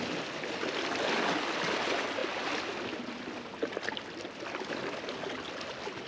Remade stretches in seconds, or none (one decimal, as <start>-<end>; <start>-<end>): none